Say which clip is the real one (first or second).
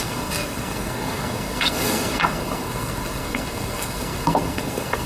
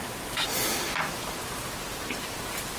second